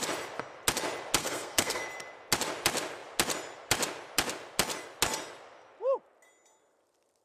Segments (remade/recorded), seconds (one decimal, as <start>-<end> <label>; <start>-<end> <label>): 0.0-1.2 recorded; 1.2-1.8 remade; 1.8-7.2 recorded